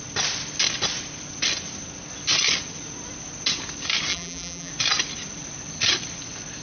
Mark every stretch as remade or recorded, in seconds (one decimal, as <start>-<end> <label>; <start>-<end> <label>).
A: 0.0-4.1 recorded; 4.1-4.7 remade; 4.7-6.6 recorded

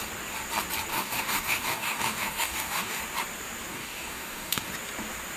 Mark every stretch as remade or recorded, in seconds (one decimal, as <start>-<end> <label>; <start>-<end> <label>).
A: 0.0-0.9 recorded; 0.9-3.0 remade; 3.0-3.7 recorded; 3.7-4.7 remade; 4.7-5.4 recorded

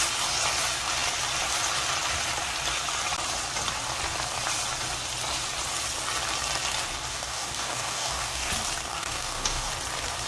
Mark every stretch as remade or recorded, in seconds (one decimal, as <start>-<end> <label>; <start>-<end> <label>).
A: 0.0-7.1 recorded; 7.1-8.5 remade; 8.5-8.9 recorded; 8.9-9.7 remade; 9.7-10.3 recorded

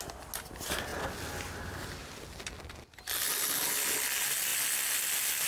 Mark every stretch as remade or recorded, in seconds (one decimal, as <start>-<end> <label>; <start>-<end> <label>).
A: 0.0-5.5 recorded

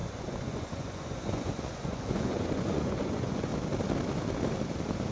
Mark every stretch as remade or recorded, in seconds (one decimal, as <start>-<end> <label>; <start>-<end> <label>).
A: 0.0-3.5 remade; 3.5-5.1 recorded

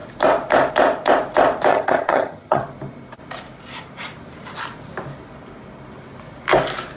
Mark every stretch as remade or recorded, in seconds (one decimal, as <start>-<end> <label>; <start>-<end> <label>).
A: 0.0-1.7 recorded; 1.7-2.6 remade; 2.6-7.0 recorded

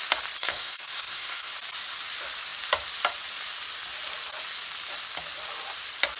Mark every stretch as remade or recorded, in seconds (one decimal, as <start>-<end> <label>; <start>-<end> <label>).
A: 0.0-0.4 recorded; 0.4-1.5 remade; 1.5-6.2 recorded

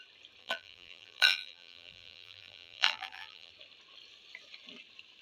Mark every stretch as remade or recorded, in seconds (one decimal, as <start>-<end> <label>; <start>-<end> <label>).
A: 0.0-0.4 recorded; 0.4-3.5 remade; 3.5-5.2 recorded